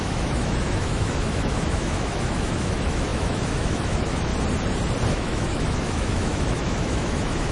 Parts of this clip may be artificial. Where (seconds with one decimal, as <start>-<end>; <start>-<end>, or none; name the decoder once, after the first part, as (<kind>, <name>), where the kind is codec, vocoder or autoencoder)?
0.0-4.3 (autoencoder, DAC-VAE); 5.1-7.5